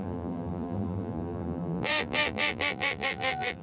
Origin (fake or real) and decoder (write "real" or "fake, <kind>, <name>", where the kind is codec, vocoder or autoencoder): fake, vocoder, BigVGAN v2